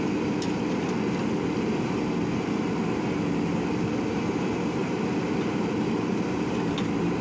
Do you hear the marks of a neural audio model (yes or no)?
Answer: no